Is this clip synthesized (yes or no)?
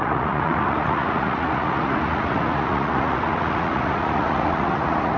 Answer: yes